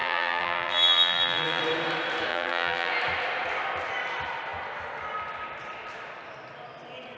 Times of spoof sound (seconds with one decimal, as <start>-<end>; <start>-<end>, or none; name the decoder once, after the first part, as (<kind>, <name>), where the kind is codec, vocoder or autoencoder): 0.0-1.6 (vocoder, BigVGAN v2); 2.3-2.9